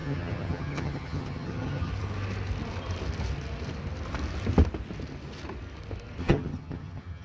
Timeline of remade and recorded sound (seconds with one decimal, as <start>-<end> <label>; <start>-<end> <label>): 0.0-1.9 remade; 1.9-6.2 recorded; 6.2-7.2 remade